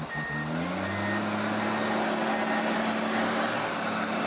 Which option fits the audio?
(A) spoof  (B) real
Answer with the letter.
B